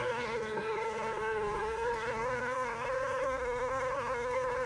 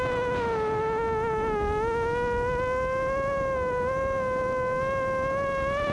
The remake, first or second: first